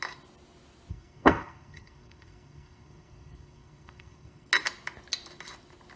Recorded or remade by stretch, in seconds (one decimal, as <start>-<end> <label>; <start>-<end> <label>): 0.0-0.9 recorded; 0.9-4.5 remade; 4.5-6.0 recorded